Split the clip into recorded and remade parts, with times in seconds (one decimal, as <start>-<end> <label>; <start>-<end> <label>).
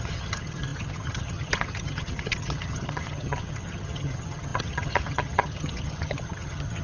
0.0-6.8 remade